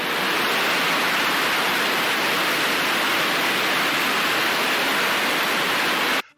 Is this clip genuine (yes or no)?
yes